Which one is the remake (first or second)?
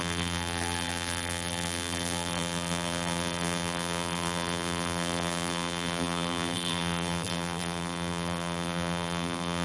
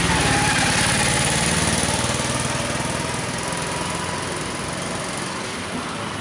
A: first